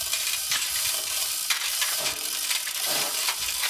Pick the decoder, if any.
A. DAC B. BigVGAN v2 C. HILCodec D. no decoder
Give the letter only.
B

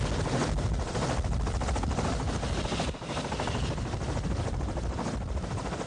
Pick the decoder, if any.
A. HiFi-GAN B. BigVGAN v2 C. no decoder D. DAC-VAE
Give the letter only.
C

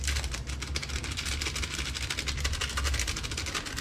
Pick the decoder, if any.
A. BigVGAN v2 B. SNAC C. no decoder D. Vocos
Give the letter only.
C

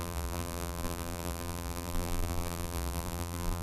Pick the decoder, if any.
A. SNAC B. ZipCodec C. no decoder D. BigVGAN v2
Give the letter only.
D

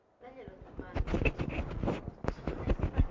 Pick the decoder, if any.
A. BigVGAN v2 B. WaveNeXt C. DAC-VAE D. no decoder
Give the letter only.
D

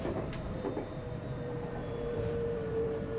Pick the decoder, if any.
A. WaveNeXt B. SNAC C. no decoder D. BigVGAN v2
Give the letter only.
D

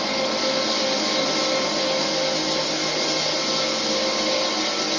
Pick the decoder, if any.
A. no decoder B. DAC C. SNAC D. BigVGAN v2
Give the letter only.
A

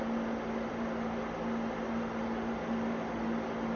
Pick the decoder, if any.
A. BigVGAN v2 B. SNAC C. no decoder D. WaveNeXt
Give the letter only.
C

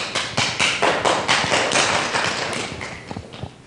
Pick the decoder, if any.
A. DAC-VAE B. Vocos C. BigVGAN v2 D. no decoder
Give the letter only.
D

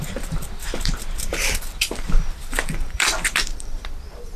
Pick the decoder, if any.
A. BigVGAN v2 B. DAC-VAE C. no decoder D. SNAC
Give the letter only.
A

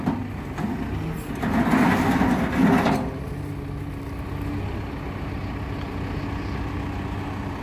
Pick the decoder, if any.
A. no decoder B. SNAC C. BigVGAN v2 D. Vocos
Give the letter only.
A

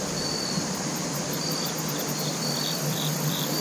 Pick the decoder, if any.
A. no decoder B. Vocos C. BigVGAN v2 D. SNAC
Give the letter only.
C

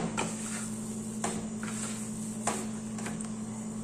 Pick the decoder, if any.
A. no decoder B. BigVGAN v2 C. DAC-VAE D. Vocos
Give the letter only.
A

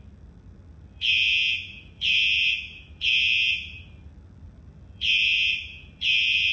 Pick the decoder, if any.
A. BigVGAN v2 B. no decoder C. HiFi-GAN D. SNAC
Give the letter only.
A